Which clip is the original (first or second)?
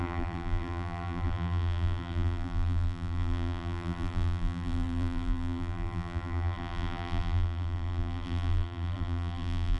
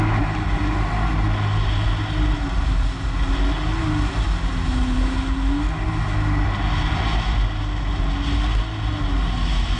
second